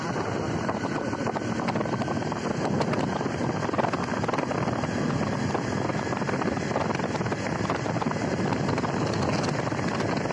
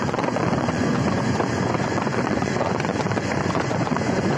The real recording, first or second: first